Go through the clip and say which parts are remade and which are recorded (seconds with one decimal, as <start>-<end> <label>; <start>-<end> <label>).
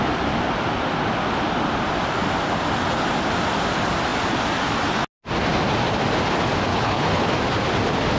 0.0-6.7 recorded; 6.7-7.3 remade; 7.3-8.2 recorded